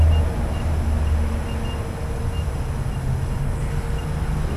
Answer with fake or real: real